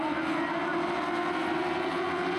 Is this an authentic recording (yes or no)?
yes